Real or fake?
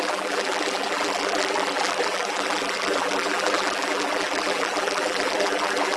fake